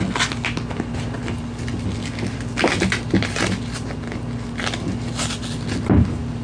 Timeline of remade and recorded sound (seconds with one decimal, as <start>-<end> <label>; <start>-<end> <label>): 0.0-6.4 recorded